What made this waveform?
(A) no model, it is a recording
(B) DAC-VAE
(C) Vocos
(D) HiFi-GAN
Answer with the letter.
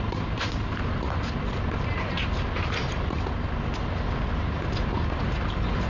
A